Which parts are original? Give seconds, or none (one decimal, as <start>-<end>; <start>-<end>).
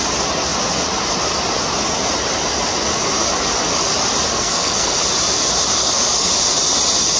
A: 0.0-4.3; 5.0-5.8; 6.3-7.2